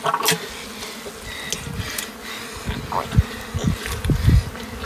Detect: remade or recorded recorded